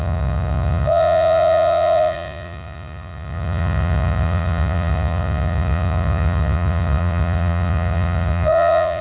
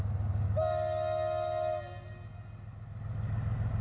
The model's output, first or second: first